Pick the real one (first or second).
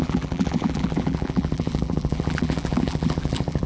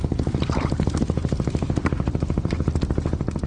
second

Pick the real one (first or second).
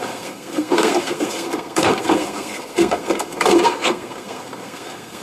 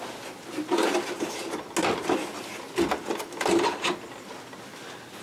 second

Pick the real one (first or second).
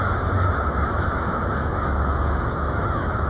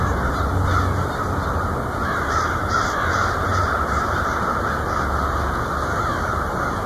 second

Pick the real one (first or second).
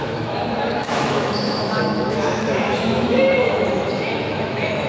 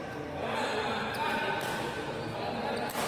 second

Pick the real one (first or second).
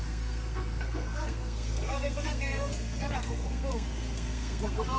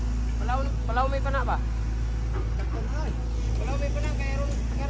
second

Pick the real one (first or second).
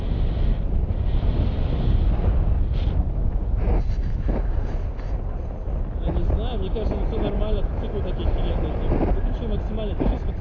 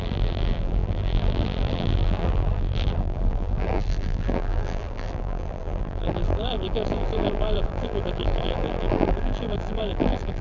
first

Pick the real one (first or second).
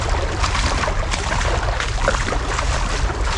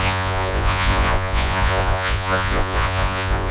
first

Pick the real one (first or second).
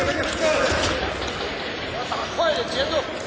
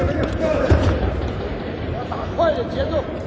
first